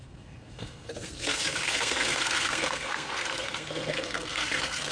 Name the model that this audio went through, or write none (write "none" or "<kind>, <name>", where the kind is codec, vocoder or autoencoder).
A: codec, SNAC